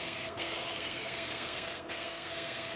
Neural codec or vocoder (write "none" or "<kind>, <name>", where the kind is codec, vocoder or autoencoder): codec, SNAC